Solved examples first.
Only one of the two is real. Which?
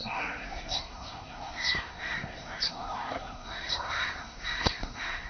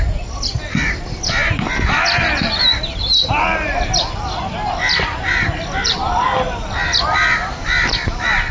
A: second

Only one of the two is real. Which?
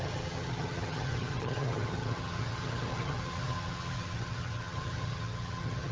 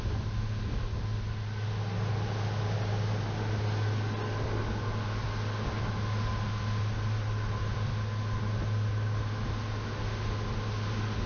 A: second